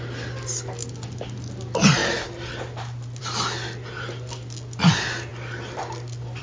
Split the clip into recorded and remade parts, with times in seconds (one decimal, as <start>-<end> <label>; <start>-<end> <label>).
0.0-6.4 recorded